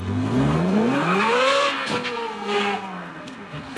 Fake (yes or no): yes